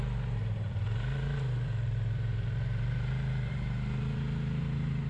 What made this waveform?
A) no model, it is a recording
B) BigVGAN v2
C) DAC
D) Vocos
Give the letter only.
B